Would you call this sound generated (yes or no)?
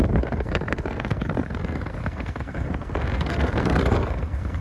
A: yes